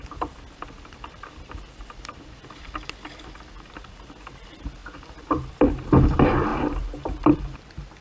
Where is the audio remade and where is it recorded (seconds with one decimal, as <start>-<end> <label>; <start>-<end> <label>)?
0.0-6.5 recorded; 6.5-8.0 remade